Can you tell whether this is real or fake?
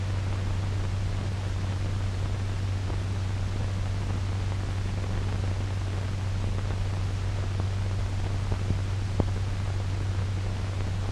real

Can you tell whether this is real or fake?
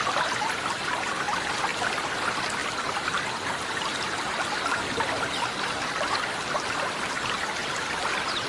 real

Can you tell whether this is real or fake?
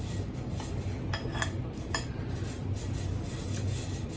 real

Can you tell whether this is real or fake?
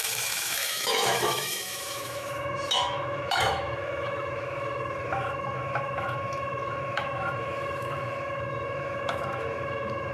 fake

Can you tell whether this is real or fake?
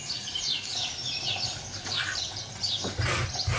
fake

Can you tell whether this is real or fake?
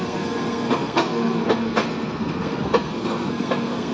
fake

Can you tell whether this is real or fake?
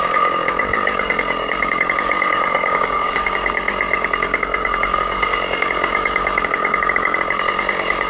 fake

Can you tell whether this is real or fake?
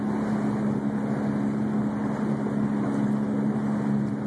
real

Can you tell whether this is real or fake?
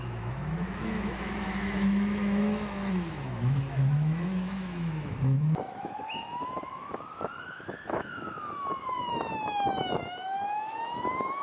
fake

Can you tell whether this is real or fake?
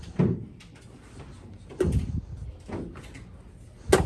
real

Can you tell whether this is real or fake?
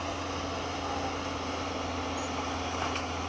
real